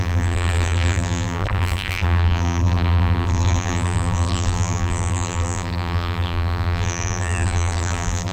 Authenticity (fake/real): fake